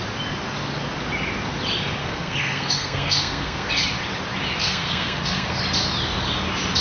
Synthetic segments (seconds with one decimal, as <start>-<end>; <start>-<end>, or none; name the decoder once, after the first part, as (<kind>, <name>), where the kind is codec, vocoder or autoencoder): 2.0-3.7 (codec, SNAC); 4.6-5.6